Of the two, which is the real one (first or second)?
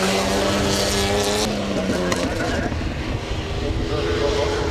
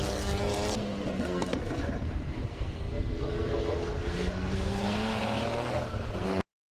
first